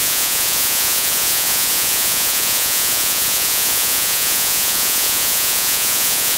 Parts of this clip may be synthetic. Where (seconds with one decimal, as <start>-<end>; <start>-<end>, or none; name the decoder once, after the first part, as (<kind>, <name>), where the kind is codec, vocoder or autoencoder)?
0.0-6.4 (vocoder, Vocos)